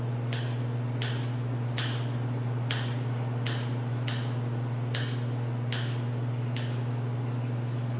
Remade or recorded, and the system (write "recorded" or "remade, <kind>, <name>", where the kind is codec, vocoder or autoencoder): recorded